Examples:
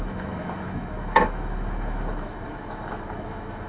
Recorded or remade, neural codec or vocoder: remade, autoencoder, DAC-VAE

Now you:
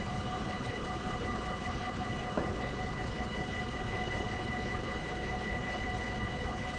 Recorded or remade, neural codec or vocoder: remade, codec, HILCodec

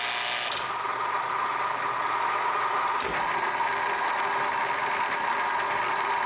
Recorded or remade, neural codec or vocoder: recorded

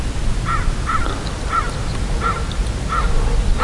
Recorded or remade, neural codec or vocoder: recorded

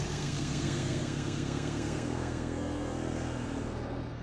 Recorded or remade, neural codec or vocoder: remade, codec, SNAC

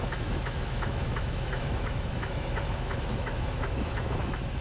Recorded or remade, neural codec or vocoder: remade, autoencoder, DAC-VAE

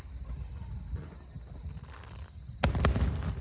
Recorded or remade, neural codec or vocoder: recorded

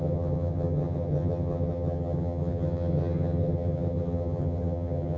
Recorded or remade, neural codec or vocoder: remade, vocoder, HiFi-GAN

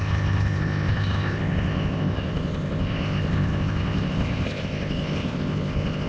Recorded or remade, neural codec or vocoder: remade, codec, ZipCodec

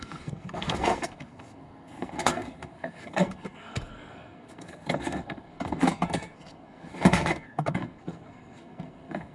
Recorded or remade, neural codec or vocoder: remade, codec, SNAC